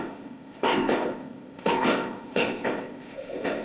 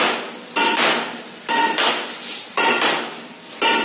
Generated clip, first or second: first